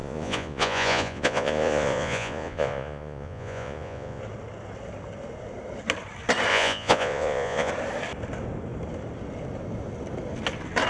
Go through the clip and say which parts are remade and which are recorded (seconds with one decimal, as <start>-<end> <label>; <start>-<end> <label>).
0.0-4.2 remade; 4.2-6.5 recorded; 6.5-7.7 remade; 7.7-10.9 recorded